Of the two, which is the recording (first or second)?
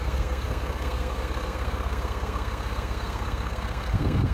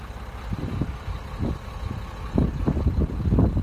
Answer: second